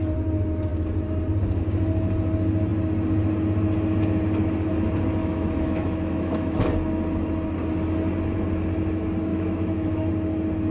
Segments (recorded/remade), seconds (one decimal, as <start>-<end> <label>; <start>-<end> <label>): 0.0-5.2 recorded; 5.2-6.7 remade; 6.7-9.3 recorded; 9.3-10.1 remade; 10.1-10.7 recorded